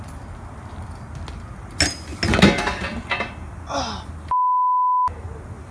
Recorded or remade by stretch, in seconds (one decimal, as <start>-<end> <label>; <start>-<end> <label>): 0.0-5.7 recorded